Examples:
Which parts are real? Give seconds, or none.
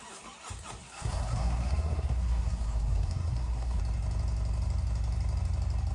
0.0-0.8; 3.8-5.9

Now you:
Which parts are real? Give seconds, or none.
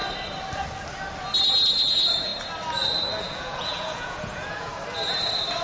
0.0-1.8; 2.3-3.2; 4.7-5.6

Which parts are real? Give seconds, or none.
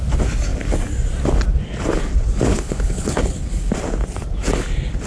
0.0-2.5; 3.7-5.1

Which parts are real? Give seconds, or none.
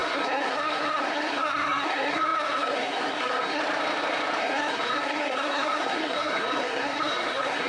3.6-4.4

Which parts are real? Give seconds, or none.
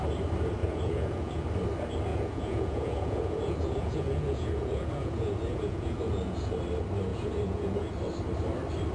0.0-0.6; 1.5-2.1; 6.5-7.1; 7.9-8.9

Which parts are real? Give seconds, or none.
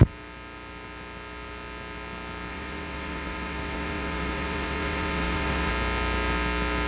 0.0-2.5; 5.7-6.9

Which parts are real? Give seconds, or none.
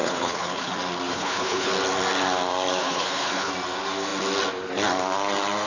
0.7-1.1; 1.7-2.8; 3.5-5.7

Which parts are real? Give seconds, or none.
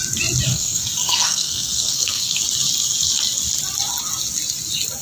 0.0-0.5; 2.4-5.0